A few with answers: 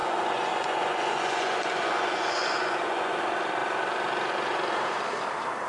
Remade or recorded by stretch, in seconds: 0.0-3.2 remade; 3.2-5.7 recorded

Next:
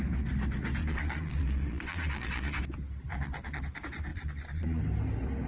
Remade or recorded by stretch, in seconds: 0.0-0.8 recorded; 0.8-2.6 remade; 2.6-3.1 recorded; 3.1-3.6 remade; 3.6-4.1 recorded; 4.1-4.8 remade; 4.8-5.5 recorded

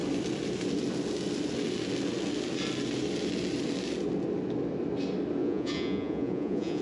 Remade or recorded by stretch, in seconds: 0.0-5.4 recorded; 5.4-6.8 remade

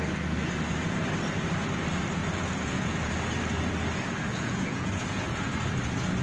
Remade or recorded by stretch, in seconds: 0.0-2.2 recorded; 2.2-3.1 remade; 3.1-4.3 recorded; 4.3-5.5 remade; 5.5-6.2 recorded

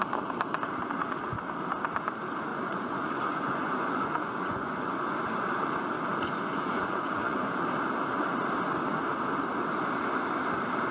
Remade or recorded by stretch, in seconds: 0.0-0.8 recorded; 0.8-1.4 remade; 1.4-2.5 recorded; 2.5-5.2 remade; 5.2-6.1 recorded; 6.1-7.6 remade; 7.6-10.9 recorded

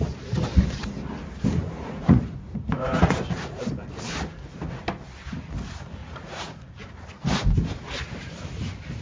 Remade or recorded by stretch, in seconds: 0.0-1.6 recorded; 1.6-3.6 remade; 3.6-6.0 recorded; 6.0-6.9 remade; 6.9-9.0 recorded

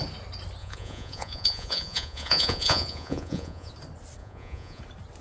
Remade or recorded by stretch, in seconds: 0.0-0.6 recorded; 0.6-3.7 remade; 3.7-4.2 recorded; 4.2-4.8 remade; 4.8-5.2 recorded

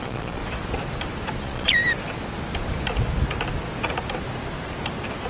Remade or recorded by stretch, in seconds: 0.0-0.4 remade; 0.4-1.4 recorded; 1.4-1.8 remade; 1.8-5.3 recorded